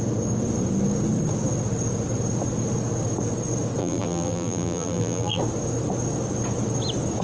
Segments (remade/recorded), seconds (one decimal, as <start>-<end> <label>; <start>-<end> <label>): 0.0-3.8 recorded; 3.8-5.4 remade; 5.4-7.2 recorded